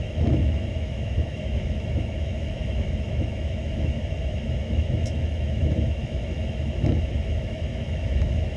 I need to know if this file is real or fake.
fake